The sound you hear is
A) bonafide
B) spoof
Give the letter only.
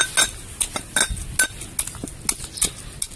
A